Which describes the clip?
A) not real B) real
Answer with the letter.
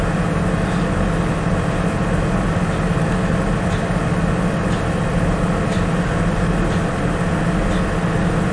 B